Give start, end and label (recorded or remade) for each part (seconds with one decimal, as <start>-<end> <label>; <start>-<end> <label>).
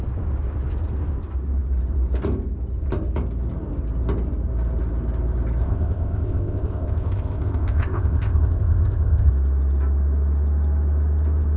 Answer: 0.0-5.6 recorded; 5.6-9.3 remade; 9.3-11.6 recorded